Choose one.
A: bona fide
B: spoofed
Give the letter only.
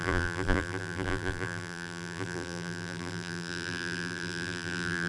B